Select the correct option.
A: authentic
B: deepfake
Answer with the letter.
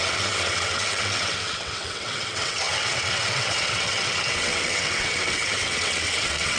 B